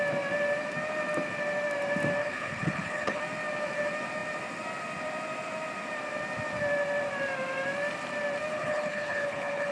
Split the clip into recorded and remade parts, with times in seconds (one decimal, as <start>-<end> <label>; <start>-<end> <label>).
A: 0.0-2.2 recorded; 2.2-3.2 remade; 3.2-8.5 recorded; 8.5-9.7 remade